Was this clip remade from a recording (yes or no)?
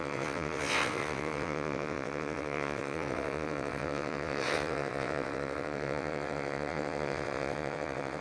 yes